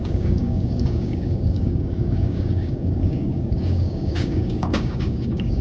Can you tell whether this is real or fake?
fake